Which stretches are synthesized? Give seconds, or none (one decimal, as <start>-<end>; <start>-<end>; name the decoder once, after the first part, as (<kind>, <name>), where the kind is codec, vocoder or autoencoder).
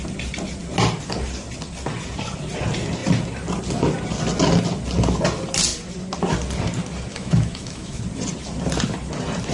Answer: 7.1-8.0 (autoencoder, DAC-VAE)